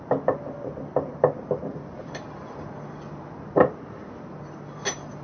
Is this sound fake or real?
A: real